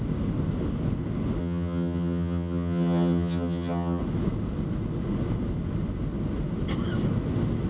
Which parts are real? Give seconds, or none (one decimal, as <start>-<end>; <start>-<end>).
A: 0.0-1.4; 4.0-7.7